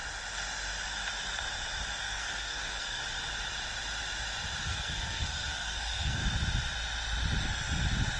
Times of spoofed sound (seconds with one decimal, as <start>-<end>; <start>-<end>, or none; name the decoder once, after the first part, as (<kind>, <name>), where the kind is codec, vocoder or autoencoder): 2.0-3.0 (codec, SNAC); 4.6-6.2